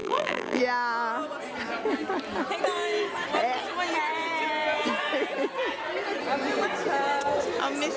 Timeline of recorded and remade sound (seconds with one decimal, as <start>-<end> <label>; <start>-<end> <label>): 0.0-0.6 remade; 0.6-8.0 recorded